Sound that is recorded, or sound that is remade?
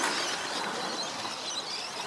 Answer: recorded